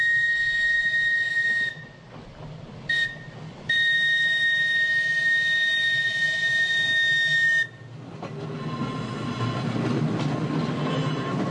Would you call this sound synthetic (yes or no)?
no